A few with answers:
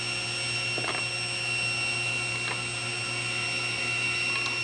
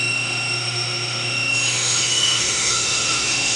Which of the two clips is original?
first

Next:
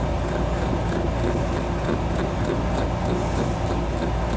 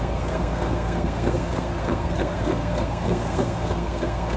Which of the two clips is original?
first